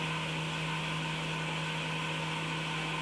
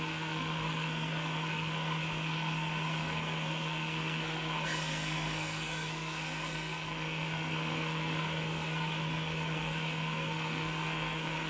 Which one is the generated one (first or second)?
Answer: second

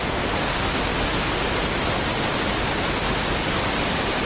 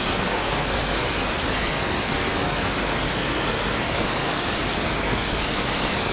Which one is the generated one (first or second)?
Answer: second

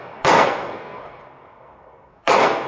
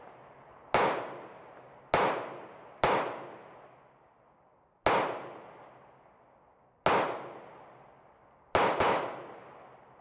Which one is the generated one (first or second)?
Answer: first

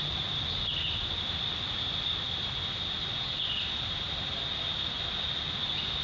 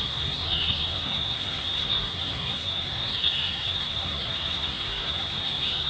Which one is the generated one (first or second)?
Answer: second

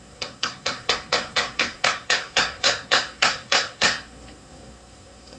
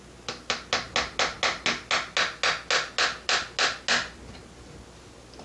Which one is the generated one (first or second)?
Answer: first